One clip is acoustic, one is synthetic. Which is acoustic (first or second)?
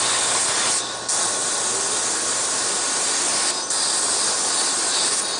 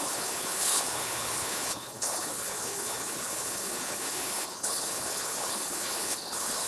first